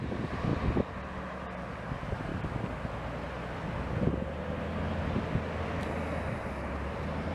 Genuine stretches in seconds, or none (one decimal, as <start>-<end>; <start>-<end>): 0.5-1.9; 2.3-6.7